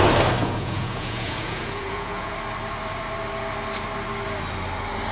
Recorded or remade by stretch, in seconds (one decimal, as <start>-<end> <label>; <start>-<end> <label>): 0.0-0.4 recorded; 0.4-2.3 remade; 2.3-5.1 recorded